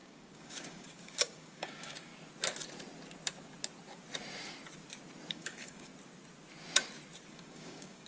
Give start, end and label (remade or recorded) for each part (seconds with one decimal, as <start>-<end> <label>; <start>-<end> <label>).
0.0-2.1 remade; 2.1-5.3 recorded; 5.3-5.9 remade; 5.9-7.3 recorded; 7.3-8.1 remade